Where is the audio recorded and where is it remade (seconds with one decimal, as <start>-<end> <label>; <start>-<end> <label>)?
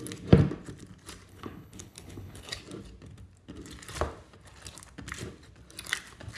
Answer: 0.0-1.3 recorded; 1.3-2.6 remade; 2.6-6.4 recorded